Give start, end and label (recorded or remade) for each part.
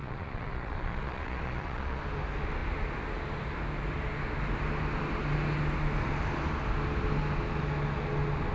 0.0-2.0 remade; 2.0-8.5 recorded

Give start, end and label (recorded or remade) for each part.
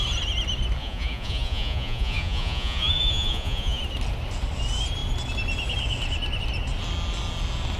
0.0-0.8 recorded; 0.8-3.8 remade; 3.8-7.8 recorded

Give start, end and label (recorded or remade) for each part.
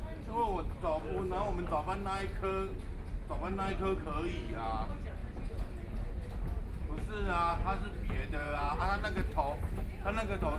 0.0-5.2 recorded; 5.2-5.7 remade; 5.7-7.5 recorded; 7.5-8.8 remade; 8.8-10.6 recorded